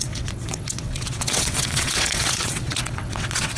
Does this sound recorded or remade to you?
remade